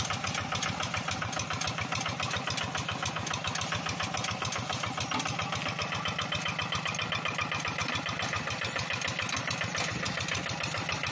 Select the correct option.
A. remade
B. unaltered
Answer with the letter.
B